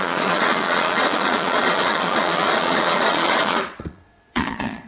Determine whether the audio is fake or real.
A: fake